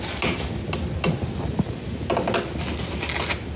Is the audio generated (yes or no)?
no